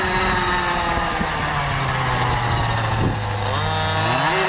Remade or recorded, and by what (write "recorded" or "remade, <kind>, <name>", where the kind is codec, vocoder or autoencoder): recorded